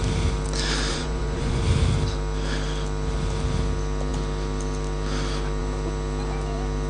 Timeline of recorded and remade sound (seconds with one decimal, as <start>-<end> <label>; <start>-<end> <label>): 0.0-0.9 recorded; 0.9-1.6 remade; 1.6-6.9 recorded